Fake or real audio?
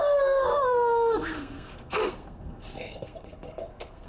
fake